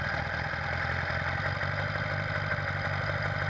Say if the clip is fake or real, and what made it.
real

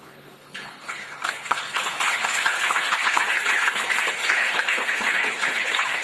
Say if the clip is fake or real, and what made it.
fake, codec, HILCodec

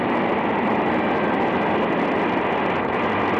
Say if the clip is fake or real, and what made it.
real